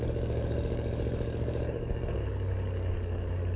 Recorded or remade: remade